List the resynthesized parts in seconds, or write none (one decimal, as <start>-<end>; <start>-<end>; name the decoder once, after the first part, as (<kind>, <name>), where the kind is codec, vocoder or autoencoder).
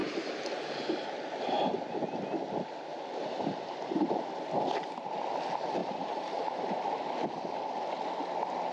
0.0-0.7 (vocoder, BigVGAN v2); 2.9-4.3; 5.8-6.4